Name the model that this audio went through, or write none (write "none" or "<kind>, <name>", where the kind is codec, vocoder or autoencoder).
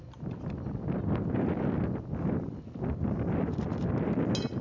none